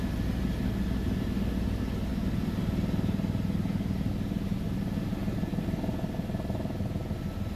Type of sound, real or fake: real